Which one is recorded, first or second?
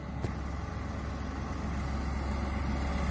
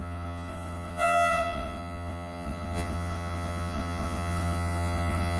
first